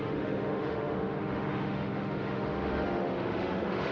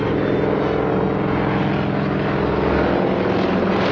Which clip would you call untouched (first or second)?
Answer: second